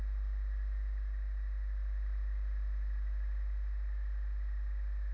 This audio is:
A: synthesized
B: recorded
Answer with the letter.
B